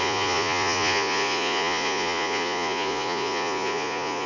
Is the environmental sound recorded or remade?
remade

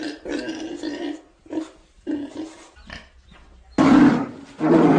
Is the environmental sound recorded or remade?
recorded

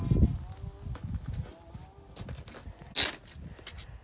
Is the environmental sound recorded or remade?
recorded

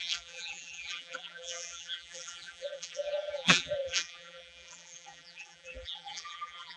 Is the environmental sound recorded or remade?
remade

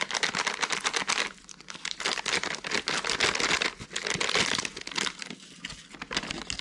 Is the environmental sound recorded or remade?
recorded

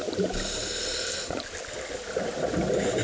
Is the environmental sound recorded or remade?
recorded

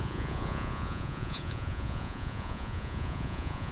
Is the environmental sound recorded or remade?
remade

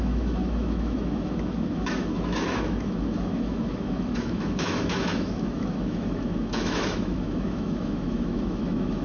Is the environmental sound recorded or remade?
remade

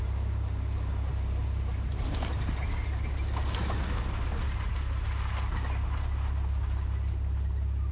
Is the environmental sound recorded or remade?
recorded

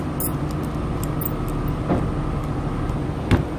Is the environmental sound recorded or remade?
recorded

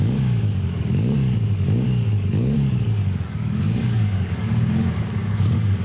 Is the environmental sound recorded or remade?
remade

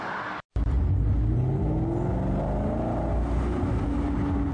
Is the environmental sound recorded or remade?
recorded